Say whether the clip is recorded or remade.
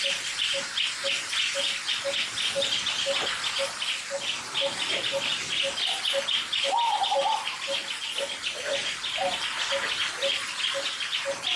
recorded